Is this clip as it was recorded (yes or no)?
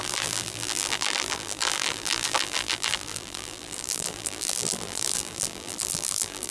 no